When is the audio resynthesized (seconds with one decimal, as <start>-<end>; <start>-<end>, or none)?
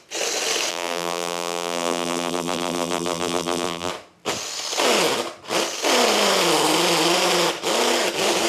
0.7-3.9